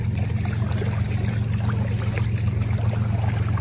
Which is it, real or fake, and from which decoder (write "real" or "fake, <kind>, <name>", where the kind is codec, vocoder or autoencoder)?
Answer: real